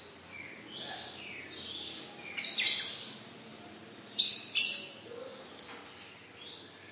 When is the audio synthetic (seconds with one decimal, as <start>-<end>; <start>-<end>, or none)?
3.5-4.2